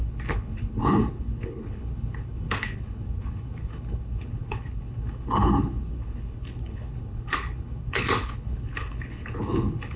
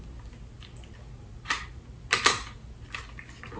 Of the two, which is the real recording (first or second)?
second